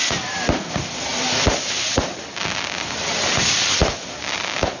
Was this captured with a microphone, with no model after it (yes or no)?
yes